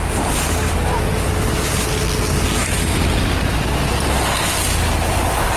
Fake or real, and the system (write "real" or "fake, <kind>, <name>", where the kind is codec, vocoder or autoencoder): real